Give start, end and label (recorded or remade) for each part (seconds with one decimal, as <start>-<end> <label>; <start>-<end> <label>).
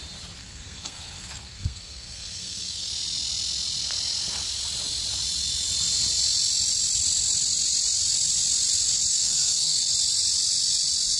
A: 0.0-0.4 recorded; 0.4-2.9 remade; 2.9-9.1 recorded; 9.1-9.8 remade; 9.8-11.2 recorded